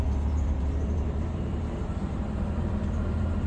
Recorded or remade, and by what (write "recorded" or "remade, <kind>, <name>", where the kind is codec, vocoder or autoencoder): remade, vocoder, BigVGAN v2